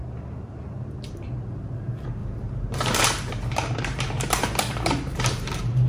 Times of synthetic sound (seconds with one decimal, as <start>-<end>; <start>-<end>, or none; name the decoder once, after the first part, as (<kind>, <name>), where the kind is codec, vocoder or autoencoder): 2.2-5.9 (vocoder, BigVGAN v2)